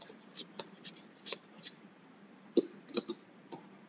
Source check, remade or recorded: recorded